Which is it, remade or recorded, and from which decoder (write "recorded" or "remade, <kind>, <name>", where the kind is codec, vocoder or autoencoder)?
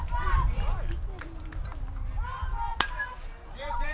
remade, vocoder, BigVGAN v2